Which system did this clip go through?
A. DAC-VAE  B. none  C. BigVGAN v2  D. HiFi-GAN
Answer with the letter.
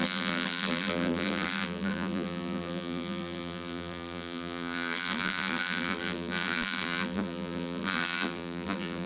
C